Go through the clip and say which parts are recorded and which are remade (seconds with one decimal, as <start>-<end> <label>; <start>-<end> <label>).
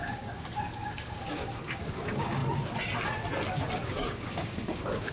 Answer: 0.0-2.4 remade; 2.4-3.7 recorded; 3.7-5.1 remade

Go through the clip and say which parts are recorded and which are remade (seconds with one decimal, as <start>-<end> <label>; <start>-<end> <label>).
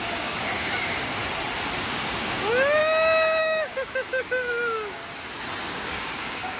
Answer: 0.0-1.2 remade; 1.2-1.8 recorded; 1.8-2.8 remade; 2.8-3.4 recorded; 3.4-5.0 remade; 5.0-5.7 recorded; 5.7-6.6 remade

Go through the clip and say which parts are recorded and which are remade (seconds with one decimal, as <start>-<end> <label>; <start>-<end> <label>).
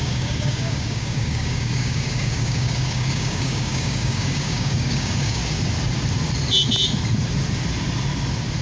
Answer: 0.0-5.4 remade; 5.4-8.6 recorded